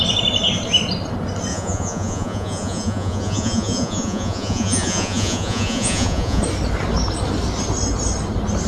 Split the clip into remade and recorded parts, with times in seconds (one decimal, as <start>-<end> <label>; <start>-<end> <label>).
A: 0.0-1.5 recorded; 1.5-6.4 remade; 6.4-8.7 recorded